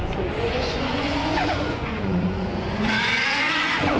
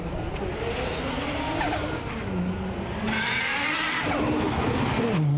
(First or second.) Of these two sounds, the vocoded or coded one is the first